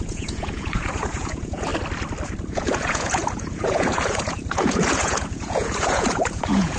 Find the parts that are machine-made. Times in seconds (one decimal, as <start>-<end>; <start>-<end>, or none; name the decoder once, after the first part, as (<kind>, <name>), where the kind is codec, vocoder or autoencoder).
0.0-1.7 (vocoder, Vocos); 2.5-6.8